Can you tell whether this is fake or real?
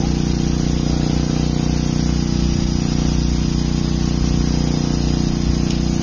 real